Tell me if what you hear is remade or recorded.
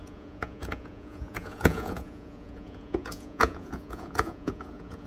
remade